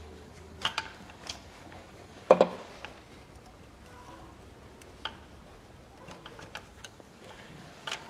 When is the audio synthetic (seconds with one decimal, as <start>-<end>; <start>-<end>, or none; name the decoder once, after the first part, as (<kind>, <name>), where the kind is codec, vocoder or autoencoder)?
0.0-2.7 (codec, DAC); 6.7-8.1